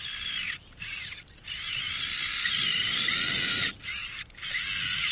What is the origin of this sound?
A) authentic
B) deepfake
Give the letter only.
A